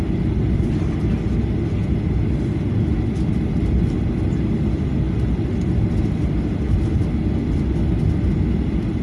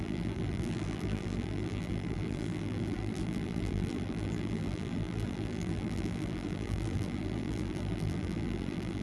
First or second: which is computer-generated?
second